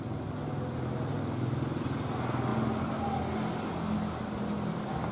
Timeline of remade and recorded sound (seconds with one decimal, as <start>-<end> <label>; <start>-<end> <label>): 0.0-5.1 recorded